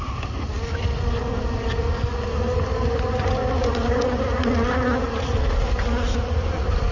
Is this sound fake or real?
real